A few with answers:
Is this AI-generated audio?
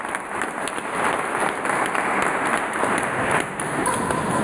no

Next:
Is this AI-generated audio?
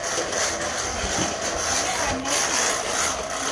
no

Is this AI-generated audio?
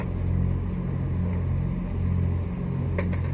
no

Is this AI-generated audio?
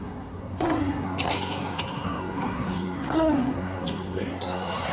yes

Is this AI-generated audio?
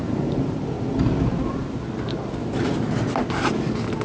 no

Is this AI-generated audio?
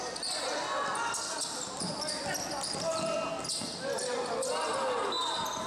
no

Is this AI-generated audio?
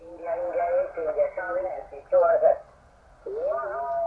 no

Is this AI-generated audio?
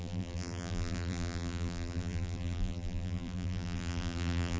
yes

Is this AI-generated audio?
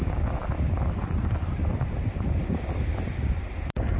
no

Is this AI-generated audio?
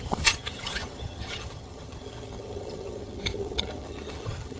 yes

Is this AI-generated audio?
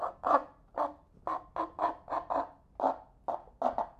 no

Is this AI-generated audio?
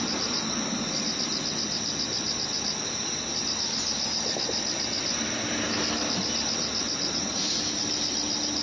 no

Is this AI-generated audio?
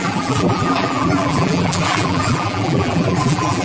yes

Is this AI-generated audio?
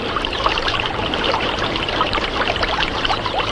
yes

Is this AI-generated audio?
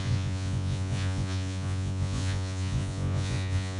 yes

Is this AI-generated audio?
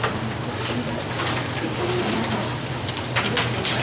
no